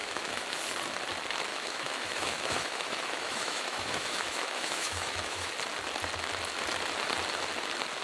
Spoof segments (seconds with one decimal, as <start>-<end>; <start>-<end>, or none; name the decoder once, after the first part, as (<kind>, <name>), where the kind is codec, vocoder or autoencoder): 0.0-0.6 (autoencoder, DAC-VAE); 1.5-5.5